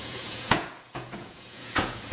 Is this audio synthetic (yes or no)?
yes